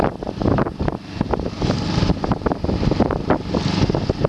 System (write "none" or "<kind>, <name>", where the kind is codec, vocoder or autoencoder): none